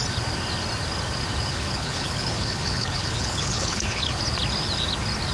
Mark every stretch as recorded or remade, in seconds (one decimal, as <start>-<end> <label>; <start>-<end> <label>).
0.0-1.5 recorded; 1.5-4.2 remade; 4.2-5.3 recorded